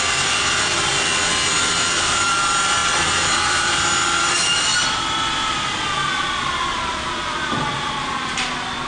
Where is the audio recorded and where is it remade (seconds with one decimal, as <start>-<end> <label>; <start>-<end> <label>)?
0.0-0.9 remade; 0.9-1.6 recorded; 1.6-8.9 remade